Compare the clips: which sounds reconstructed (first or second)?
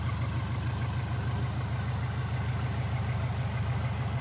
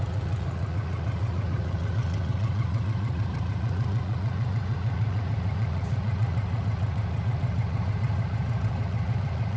second